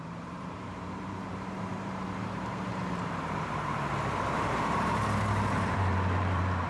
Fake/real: fake